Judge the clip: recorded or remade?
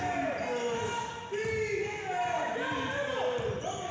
recorded